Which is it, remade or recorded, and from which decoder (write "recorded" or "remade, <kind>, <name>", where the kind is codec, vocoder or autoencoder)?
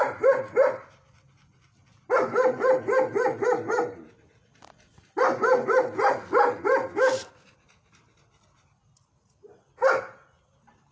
recorded